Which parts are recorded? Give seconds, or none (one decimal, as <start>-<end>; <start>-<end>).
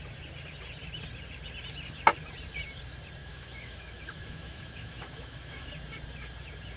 0.0-3.2; 5.7-6.8